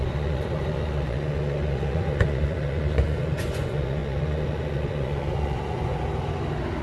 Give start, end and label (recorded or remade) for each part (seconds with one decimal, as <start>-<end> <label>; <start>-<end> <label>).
0.0-5.9 remade; 5.9-6.8 recorded